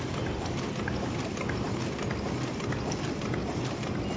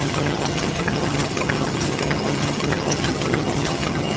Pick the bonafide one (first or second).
first